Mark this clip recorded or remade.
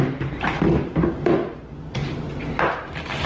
recorded